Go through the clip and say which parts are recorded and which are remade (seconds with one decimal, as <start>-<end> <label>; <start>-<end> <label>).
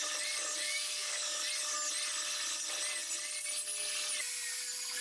0.0-0.6 recorded; 0.6-1.4 remade; 1.4-5.0 recorded